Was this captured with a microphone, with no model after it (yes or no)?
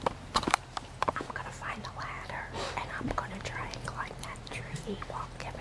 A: no